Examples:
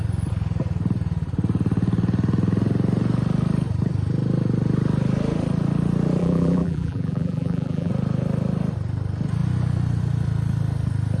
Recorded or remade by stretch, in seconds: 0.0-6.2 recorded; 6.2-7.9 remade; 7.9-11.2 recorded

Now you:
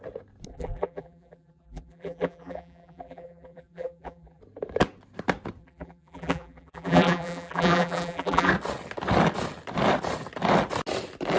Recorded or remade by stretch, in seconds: 0.0-0.5 recorded; 0.5-4.4 remade; 4.4-5.6 recorded; 5.6-8.5 remade; 8.5-11.4 recorded

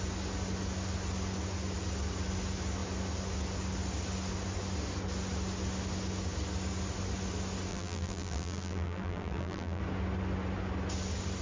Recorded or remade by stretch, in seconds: 0.0-7.7 recorded; 7.7-9.8 remade; 9.8-11.4 recorded

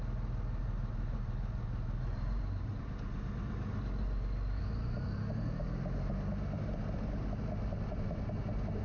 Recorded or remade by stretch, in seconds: 0.0-0.6 recorded; 0.6-2.7 remade; 2.7-7.7 recorded; 7.7-8.2 remade; 8.2-8.8 recorded

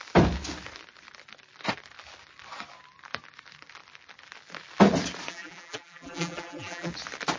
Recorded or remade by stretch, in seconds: 0.0-5.3 recorded; 5.3-6.9 remade; 6.9-7.4 recorded

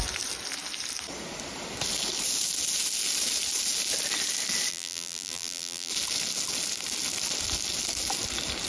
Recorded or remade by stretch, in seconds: 0.0-4.7 recorded; 4.7-5.9 remade; 5.9-8.7 recorded